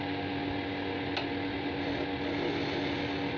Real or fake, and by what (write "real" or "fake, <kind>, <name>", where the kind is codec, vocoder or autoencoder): real